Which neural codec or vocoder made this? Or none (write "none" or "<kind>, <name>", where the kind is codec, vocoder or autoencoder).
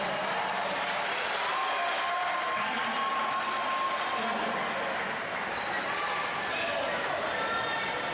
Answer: none